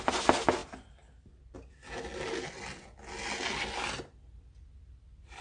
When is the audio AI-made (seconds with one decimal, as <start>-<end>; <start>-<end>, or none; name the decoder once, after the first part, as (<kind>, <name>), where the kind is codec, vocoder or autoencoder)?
none